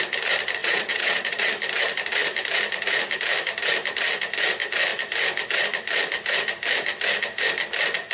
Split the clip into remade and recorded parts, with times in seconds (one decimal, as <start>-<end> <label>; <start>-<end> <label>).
0.0-0.6 recorded; 0.6-1.5 remade; 1.5-8.1 recorded